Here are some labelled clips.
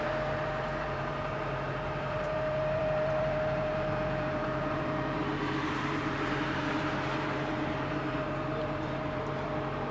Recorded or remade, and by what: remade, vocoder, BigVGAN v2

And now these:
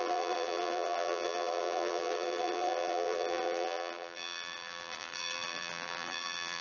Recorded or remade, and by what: remade, vocoder, BigVGAN v2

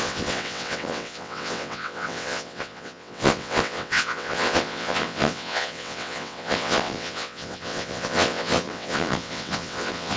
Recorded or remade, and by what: remade, vocoder, WaveNeXt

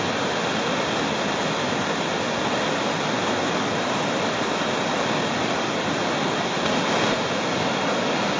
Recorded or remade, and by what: recorded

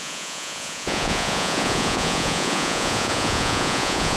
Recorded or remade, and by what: remade, vocoder, Vocos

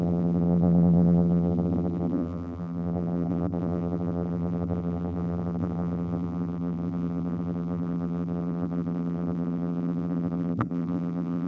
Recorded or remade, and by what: remade, vocoder, BigVGAN v2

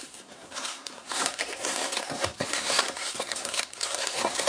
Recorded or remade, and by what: remade, codec, SNAC